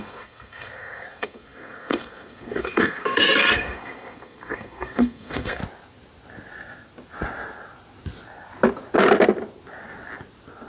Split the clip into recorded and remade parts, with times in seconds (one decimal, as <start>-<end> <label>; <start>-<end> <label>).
0.0-5.6 remade; 5.6-10.7 recorded